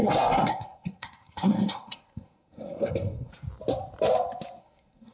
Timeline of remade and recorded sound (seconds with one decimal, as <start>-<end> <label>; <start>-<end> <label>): 0.0-3.3 remade; 3.3-4.6 recorded; 4.6-5.1 remade